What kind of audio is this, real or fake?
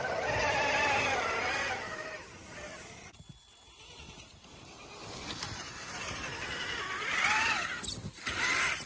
real